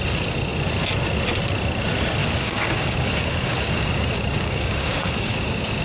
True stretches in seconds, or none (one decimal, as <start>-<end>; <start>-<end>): 0.0-2.2